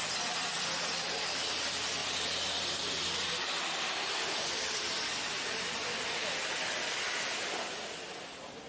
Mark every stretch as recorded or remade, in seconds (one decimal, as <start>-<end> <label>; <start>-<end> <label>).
0.0-2.0 remade; 2.0-3.0 recorded; 3.0-8.7 remade

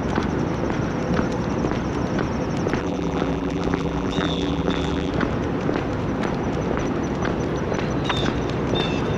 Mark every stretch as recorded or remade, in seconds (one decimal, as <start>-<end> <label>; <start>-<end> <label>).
0.0-2.8 recorded; 2.8-5.1 remade; 5.1-9.2 recorded

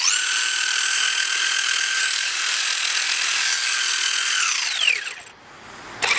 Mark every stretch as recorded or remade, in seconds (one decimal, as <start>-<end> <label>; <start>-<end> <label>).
0.0-2.0 recorded; 2.0-2.6 remade; 2.6-6.2 recorded

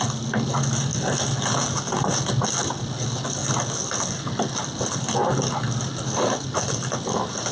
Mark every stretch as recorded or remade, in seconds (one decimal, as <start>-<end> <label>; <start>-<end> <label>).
0.0-7.5 recorded